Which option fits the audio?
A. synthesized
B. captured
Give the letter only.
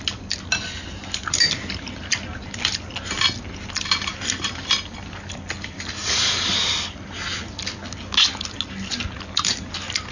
B